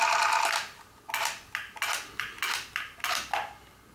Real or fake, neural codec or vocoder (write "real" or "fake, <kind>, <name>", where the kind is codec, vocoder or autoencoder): real